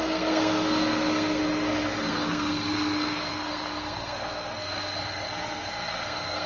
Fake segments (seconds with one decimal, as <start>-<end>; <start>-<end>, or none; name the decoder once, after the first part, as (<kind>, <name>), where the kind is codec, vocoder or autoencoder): 0.0-1.4 (codec, SNAC); 2.1-6.5